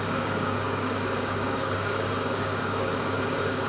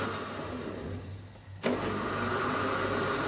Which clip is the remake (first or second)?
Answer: first